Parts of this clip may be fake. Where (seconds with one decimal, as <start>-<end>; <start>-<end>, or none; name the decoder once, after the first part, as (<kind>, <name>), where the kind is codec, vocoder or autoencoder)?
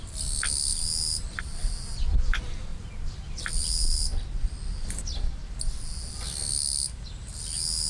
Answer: 2.7-3.4 (vocoder, BigVGAN v2)